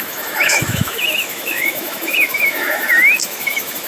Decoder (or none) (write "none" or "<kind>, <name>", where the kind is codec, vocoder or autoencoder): autoencoder, DAC-VAE